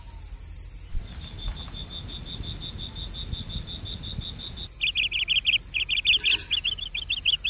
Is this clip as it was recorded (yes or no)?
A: yes